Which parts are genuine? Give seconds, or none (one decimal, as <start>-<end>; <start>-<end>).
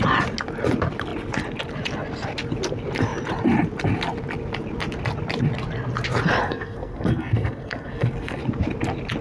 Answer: 0.0-6.4; 8.4-9.2